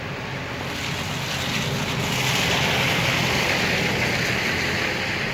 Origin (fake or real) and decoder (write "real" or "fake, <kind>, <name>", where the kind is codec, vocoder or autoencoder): real